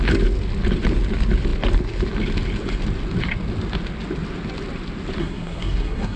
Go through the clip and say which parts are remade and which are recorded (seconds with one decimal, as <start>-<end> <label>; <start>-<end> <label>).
0.0-5.2 recorded; 5.2-6.2 remade